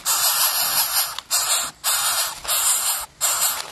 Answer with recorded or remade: recorded